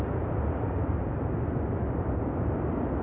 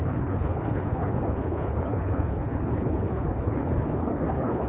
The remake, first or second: second